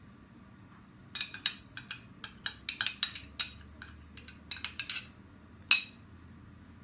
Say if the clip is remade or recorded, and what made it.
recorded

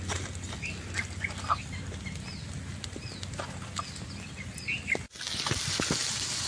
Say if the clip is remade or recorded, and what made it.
recorded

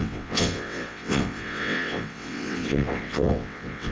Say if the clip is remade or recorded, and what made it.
remade, vocoder, WaveNeXt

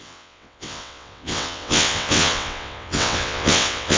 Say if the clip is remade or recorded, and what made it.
remade, vocoder, WaveNeXt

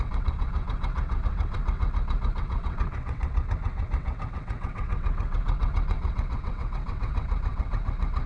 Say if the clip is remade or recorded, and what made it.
remade, vocoder, WaveNeXt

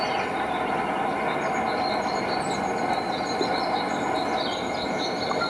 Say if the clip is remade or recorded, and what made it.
recorded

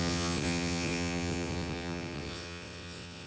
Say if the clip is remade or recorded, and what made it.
remade, vocoder, WaveNeXt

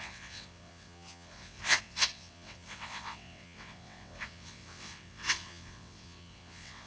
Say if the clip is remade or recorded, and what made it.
remade, vocoder, WaveNeXt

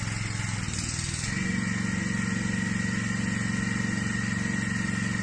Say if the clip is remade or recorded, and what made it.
recorded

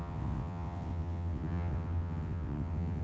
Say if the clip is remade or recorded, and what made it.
remade, vocoder, WaveNeXt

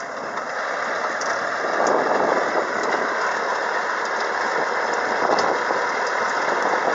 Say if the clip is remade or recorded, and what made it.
recorded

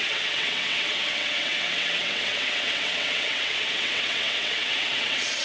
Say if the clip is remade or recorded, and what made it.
remade, vocoder, WaveNeXt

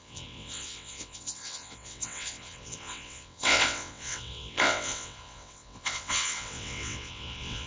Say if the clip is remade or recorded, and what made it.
remade, vocoder, WaveNeXt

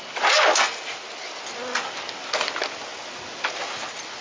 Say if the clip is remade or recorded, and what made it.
recorded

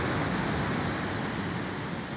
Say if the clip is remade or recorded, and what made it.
recorded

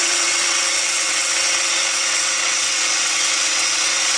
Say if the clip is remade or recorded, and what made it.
remade, vocoder, WaveNeXt